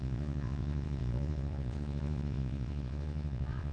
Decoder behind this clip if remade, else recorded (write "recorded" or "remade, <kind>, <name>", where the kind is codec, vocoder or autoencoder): remade, vocoder, Vocos